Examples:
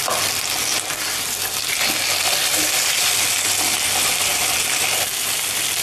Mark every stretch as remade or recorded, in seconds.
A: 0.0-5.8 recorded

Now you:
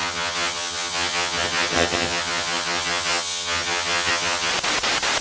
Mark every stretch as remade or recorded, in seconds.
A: 0.0-4.5 remade; 4.5-5.2 recorded